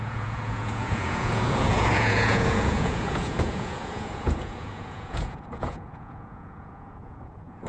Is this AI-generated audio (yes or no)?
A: yes